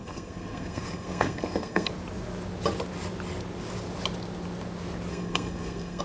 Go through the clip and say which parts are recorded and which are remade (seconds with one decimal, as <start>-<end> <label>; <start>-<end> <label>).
0.0-1.9 remade; 1.9-5.1 recorded; 5.1-6.0 remade